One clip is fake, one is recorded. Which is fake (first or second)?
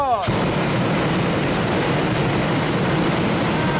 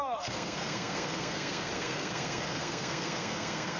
second